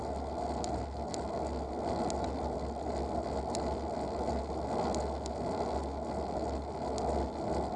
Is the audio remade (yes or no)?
no